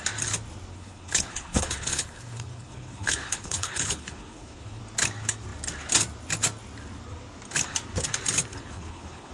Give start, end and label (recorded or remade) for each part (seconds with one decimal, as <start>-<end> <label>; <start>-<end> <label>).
0.0-0.7 recorded; 0.7-4.8 remade; 4.8-8.5 recorded; 8.5-9.3 remade